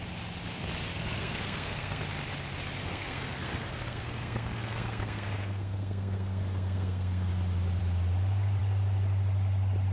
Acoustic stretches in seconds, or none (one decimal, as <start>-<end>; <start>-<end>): 0.0-0.9; 2.0-2.8; 7.3-9.9